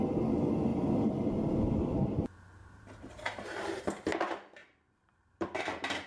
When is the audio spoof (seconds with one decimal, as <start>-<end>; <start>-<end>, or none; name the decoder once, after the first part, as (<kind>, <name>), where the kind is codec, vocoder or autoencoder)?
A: 2.6-3.8 (vocoder, BigVGAN v2); 4.6-5.6